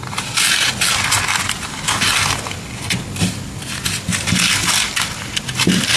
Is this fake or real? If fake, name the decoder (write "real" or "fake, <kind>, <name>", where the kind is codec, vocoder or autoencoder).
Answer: real